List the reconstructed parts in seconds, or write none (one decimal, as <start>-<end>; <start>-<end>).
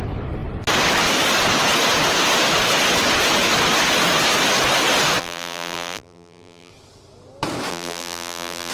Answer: 5.2-6.7; 7.7-8.7